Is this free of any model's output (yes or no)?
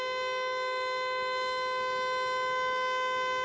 yes